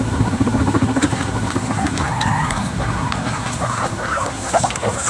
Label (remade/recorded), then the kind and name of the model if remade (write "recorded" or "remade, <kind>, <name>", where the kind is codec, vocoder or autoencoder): remade, codec, SNAC